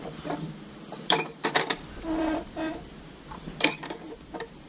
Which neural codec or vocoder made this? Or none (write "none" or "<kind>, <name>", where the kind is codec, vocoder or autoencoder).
vocoder, BigVGAN v2